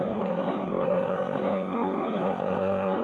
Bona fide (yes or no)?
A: no